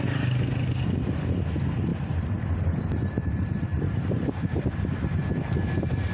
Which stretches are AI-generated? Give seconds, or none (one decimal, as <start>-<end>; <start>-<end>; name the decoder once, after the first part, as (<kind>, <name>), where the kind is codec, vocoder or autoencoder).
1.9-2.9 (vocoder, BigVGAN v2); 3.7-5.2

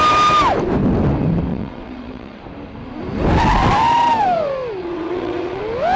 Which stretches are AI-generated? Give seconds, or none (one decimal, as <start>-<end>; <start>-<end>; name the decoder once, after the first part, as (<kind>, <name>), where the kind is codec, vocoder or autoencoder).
1.5-2.4 (vocoder, WaveNeXt); 4.8-5.6

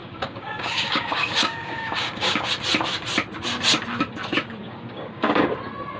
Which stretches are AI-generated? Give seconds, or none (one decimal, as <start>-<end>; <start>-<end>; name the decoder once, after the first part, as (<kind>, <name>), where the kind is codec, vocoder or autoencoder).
0.0-2.5 (codec, DAC); 4.6-5.5

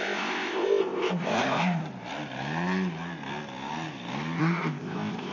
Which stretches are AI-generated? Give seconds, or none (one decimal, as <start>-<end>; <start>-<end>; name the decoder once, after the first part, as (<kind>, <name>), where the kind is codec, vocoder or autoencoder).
0.0-1.8 (codec, ZipCodec); 4.4-5.3